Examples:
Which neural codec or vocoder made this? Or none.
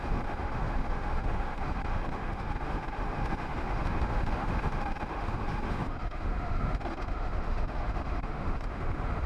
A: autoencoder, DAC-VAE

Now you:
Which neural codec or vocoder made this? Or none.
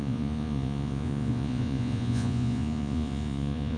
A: vocoder, Vocos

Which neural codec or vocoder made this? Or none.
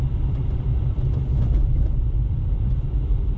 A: vocoder, BigVGAN v2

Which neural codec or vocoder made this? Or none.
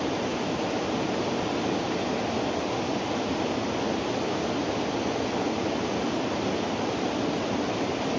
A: none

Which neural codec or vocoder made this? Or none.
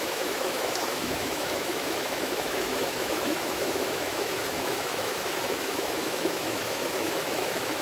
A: autoencoder, DAC-VAE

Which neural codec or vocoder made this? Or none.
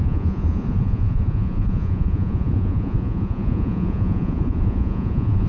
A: vocoder, Vocos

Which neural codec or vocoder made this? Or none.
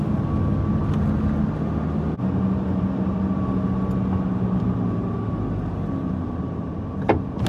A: none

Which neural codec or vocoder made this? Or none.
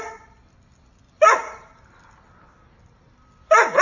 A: none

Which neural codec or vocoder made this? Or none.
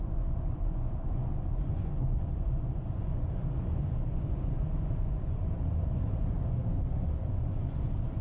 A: vocoder, Vocos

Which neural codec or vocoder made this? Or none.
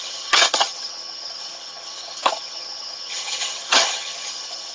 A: vocoder, HiFi-GAN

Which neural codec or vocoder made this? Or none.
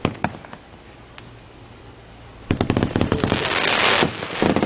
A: none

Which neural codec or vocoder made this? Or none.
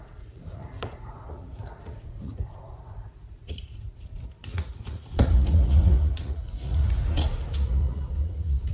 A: vocoder, Vocos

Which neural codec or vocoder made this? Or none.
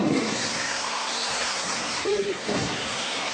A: codec, SNAC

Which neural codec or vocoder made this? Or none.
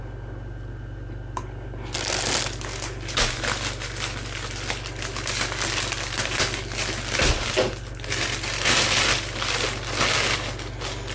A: none